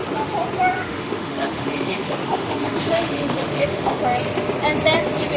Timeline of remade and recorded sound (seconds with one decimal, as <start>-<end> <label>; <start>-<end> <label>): 0.0-0.8 recorded; 0.8-4.0 remade; 4.0-5.4 recorded